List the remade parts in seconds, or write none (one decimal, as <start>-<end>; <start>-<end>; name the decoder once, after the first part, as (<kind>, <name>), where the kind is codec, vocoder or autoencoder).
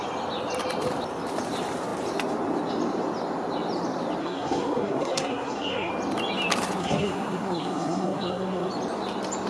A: 4.2-5.9 (codec, SNAC); 6.8-8.7